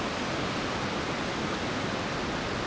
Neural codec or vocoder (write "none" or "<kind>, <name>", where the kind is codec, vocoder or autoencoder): none